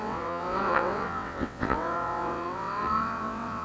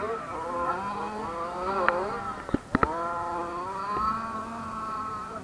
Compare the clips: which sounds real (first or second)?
second